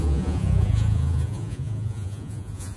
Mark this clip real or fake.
fake